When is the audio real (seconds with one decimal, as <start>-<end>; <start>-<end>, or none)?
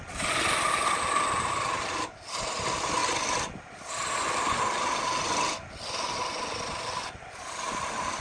0.0-8.2